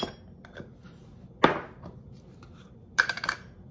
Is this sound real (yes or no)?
yes